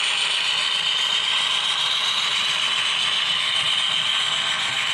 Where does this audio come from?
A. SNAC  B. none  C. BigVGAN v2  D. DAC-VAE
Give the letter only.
B